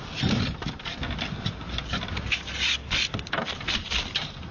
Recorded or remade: recorded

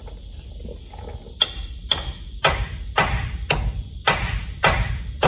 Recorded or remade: recorded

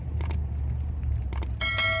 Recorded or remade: recorded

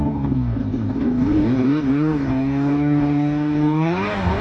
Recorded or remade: remade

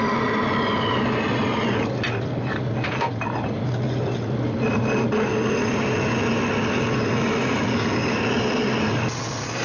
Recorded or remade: recorded